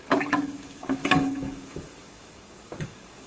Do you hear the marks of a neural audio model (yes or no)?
yes